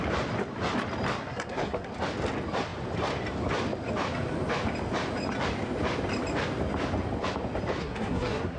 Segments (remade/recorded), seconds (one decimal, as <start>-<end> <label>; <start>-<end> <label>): 0.0-1.1 recorded; 1.1-1.9 remade; 1.9-7.8 recorded; 7.8-8.6 remade